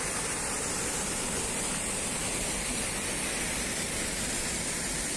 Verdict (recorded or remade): recorded